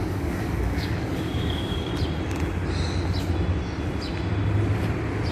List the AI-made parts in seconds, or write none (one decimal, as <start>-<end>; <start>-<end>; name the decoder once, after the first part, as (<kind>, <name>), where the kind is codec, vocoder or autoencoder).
0.0-1.9 (codec, DAC)